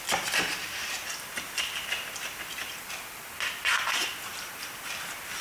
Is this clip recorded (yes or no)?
yes